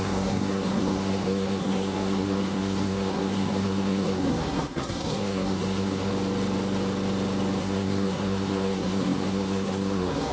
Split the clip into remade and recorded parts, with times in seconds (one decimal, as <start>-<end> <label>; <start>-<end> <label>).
0.0-6.1 remade; 6.1-7.6 recorded; 7.6-10.3 remade